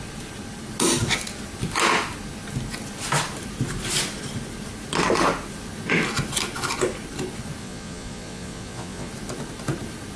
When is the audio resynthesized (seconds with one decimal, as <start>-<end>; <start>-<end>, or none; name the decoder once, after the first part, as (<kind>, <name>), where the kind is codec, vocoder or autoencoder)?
7.6-9.1 (vocoder, Vocos)